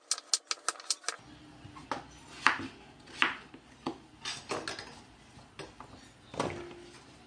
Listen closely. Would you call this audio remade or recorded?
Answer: recorded